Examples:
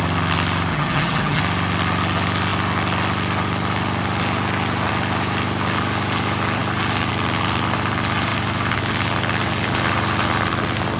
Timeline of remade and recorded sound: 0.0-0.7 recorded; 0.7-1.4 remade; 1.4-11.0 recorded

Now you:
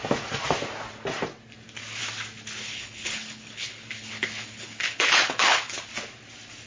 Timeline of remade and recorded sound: 0.0-2.6 recorded; 2.6-5.9 remade; 5.9-6.7 recorded

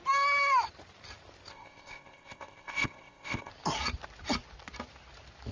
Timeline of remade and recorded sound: 0.0-1.5 recorded; 1.5-3.5 remade; 3.5-5.5 recorded

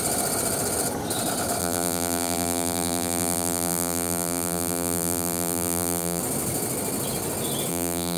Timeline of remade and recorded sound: 0.0-1.6 recorded; 1.6-6.2 remade; 6.2-7.7 recorded; 7.7-8.2 remade